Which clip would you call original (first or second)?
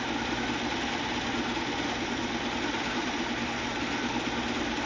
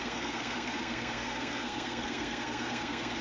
first